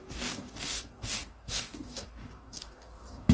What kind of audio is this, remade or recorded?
remade